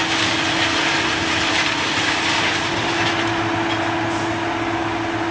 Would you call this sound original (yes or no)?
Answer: yes